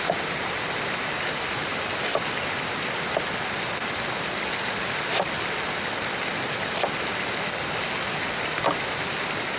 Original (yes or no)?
yes